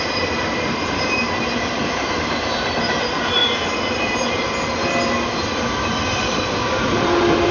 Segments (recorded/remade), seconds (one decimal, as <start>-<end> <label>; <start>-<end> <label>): 0.0-3.4 remade; 3.4-6.1 recorded; 6.1-7.5 remade